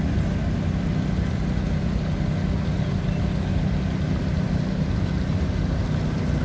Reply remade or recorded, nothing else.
recorded